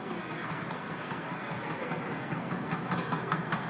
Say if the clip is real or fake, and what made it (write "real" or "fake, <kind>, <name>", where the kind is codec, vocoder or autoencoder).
fake, codec, SNAC